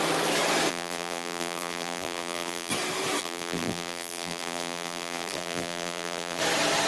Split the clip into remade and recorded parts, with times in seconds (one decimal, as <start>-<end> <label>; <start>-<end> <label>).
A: 0.0-0.7 recorded; 0.7-2.7 remade; 2.7-3.2 recorded; 3.2-6.4 remade; 6.4-6.9 recorded